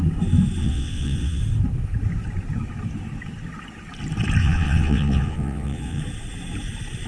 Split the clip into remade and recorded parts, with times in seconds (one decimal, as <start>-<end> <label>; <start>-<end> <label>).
0.0-0.6 recorded; 0.6-1.4 remade; 1.4-4.4 recorded; 4.4-6.0 remade; 6.0-7.1 recorded

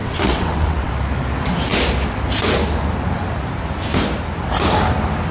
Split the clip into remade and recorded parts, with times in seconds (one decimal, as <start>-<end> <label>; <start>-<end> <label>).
0.0-0.9 remade; 0.9-5.3 recorded

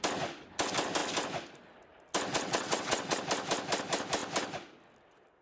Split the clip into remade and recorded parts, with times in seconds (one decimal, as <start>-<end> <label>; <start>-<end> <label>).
0.0-2.3 recorded; 2.3-3.2 remade; 3.2-5.4 recorded

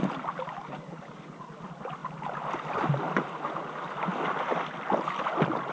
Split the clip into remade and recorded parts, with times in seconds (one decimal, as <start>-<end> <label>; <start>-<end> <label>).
0.0-5.7 recorded

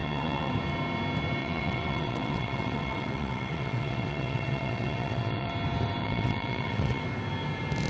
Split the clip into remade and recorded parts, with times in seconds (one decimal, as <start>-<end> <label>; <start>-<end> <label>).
0.0-0.5 remade; 0.5-1.4 recorded; 1.4-5.5 remade; 5.5-6.0 recorded; 6.0-7.0 remade; 7.0-7.9 recorded